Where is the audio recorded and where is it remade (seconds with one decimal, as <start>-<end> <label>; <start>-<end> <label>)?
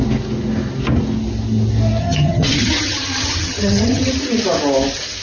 0.0-2.0 recorded; 2.0-4.1 remade; 4.1-5.2 recorded